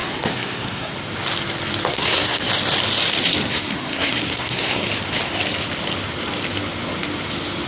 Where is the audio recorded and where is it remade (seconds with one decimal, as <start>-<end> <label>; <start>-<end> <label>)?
0.0-0.9 remade; 0.9-1.9 recorded; 1.9-2.5 remade; 2.5-3.5 recorded; 3.5-4.9 remade; 4.9-7.7 recorded